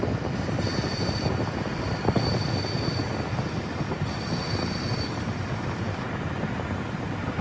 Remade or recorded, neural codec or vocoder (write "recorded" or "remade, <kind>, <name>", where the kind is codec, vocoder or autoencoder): recorded